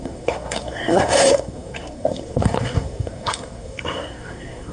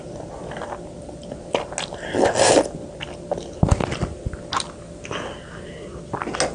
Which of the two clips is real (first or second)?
second